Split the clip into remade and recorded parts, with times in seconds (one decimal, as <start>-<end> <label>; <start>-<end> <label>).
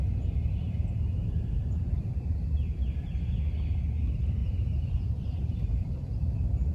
0.0-1.2 recorded; 1.2-1.8 remade; 1.8-4.4 recorded; 4.4-6.7 remade